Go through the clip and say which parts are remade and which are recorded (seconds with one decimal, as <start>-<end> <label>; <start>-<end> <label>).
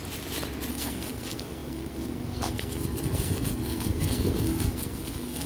0.0-0.7 recorded; 0.7-5.5 remade